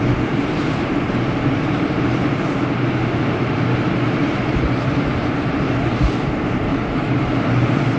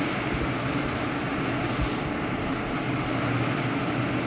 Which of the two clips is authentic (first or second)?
second